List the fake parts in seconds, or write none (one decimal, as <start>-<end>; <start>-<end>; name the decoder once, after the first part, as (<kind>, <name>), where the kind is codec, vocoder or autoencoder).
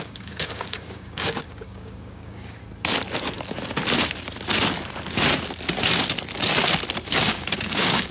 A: 0.0-2.6 (codec, DAC); 7.2-8.1